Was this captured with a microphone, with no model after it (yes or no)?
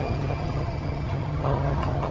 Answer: no